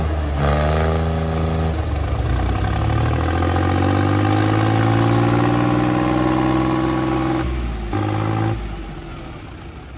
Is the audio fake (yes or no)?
no